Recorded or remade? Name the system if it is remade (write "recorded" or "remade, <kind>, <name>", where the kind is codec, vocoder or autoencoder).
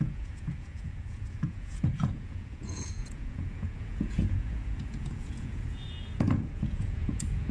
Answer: remade, vocoder, Vocos